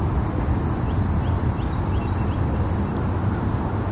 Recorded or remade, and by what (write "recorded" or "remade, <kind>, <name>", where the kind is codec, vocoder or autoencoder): recorded